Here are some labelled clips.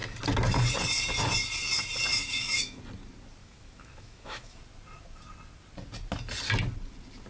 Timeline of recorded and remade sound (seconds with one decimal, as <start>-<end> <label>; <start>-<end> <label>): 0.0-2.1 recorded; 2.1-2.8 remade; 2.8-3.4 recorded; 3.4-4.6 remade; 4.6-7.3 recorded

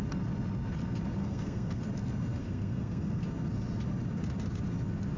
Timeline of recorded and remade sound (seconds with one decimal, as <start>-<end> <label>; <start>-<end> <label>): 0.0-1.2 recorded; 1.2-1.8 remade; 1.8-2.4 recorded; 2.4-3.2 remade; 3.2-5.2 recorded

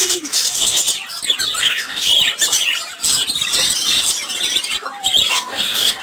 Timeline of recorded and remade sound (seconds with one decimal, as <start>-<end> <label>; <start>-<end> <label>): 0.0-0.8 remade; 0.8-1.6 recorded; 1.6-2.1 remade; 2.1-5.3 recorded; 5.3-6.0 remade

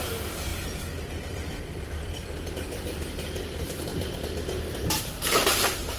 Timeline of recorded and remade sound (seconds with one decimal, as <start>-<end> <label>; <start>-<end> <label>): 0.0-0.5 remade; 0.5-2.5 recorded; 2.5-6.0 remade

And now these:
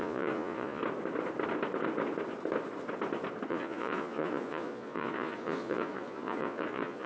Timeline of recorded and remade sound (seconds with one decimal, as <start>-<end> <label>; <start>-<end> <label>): 0.0-0.8 remade; 0.8-3.5 recorded; 3.5-7.1 remade